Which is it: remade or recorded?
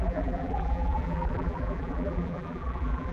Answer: remade